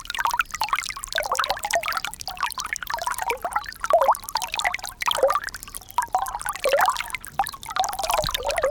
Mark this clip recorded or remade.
recorded